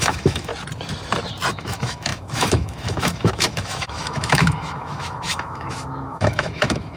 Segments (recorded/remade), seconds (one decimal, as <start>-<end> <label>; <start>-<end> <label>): 0.0-0.5 remade; 0.5-1.5 recorded; 1.5-7.0 remade